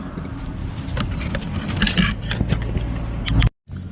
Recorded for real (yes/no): yes